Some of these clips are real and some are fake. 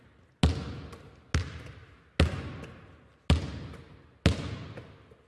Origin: real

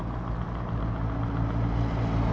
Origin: real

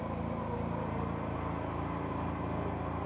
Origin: real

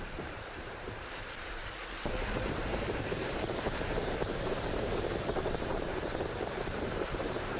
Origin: fake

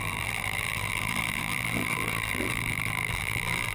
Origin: fake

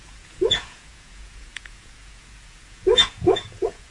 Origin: fake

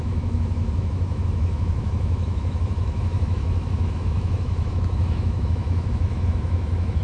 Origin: fake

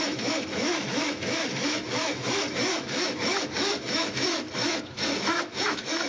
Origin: fake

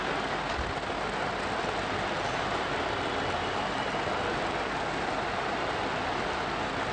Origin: real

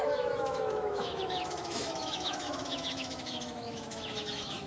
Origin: fake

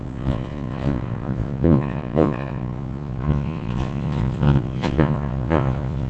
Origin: fake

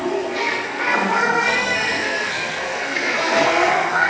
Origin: fake